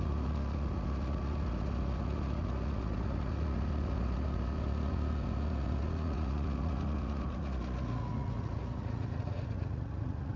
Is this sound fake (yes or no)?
yes